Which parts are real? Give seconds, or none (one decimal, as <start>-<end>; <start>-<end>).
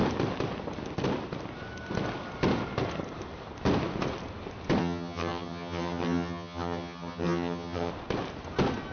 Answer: 0.0-4.8; 7.9-8.9